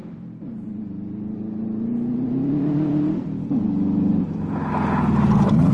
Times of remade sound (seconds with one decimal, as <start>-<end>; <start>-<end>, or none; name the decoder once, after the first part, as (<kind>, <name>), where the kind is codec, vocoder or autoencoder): 0.0-3.4 (vocoder, BigVGAN v2)